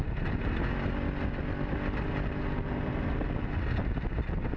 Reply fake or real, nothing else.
real